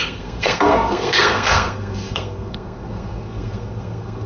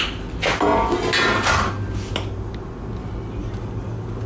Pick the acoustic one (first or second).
second